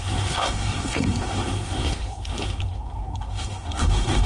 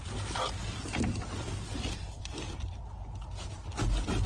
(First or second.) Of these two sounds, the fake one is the first